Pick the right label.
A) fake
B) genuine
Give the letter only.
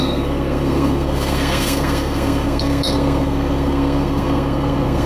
A